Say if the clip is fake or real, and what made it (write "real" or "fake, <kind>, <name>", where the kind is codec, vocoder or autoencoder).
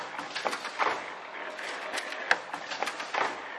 real